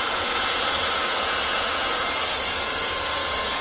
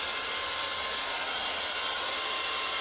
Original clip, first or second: second